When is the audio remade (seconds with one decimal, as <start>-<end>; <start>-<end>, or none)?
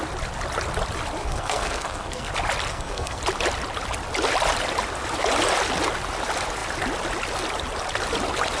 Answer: 1.2-2.3; 2.7-3.2